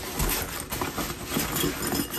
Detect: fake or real real